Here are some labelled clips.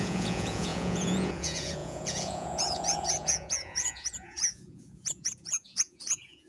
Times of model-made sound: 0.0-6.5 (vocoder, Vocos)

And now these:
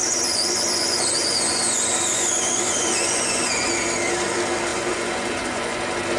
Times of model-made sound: 0.0-3.7 (vocoder, Vocos); 4.7-5.8

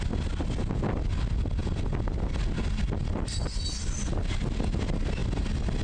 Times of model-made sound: none

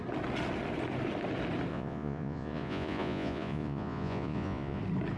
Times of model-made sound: 1.7-4.8 (vocoder, Vocos)

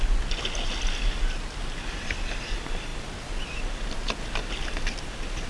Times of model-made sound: none